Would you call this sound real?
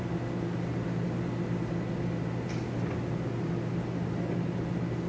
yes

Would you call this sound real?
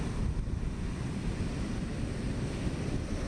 yes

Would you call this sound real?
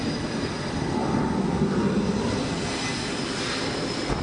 yes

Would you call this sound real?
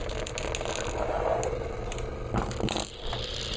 yes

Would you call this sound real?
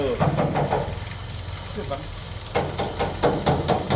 yes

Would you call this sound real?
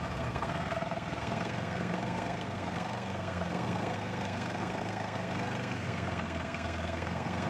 no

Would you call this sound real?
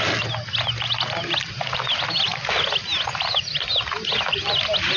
yes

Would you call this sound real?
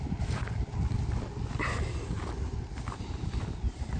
yes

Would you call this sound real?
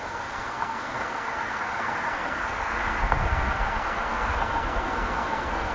no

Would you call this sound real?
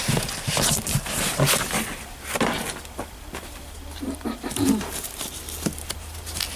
yes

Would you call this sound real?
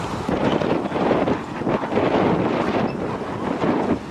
yes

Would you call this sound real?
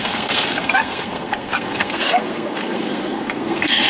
no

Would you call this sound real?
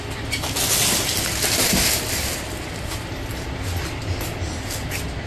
yes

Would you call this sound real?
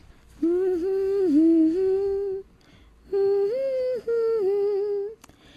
yes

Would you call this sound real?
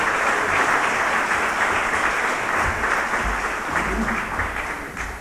yes